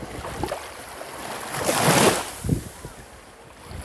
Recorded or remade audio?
recorded